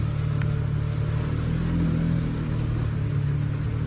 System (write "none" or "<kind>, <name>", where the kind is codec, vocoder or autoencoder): none